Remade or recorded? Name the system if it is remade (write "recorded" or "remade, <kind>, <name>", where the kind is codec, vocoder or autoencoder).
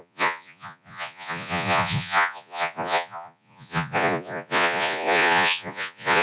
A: remade, vocoder, Vocos